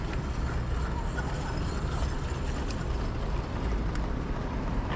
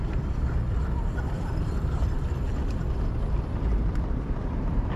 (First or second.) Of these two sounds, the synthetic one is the second